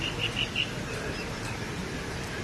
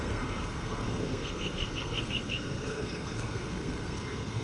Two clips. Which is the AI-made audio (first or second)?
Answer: second